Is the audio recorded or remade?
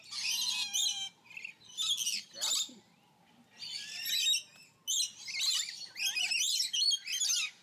recorded